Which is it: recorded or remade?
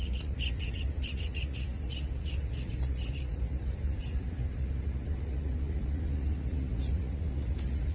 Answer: remade